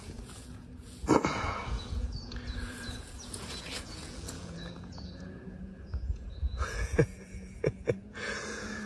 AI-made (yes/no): yes